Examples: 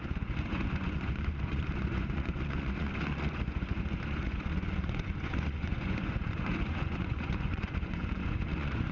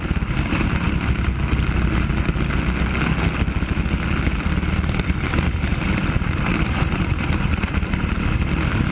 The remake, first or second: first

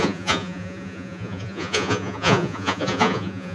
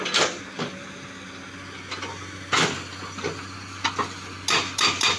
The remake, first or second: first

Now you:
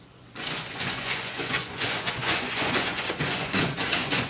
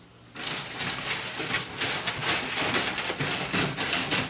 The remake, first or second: first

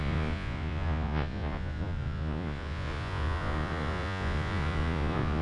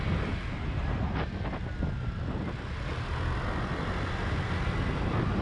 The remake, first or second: first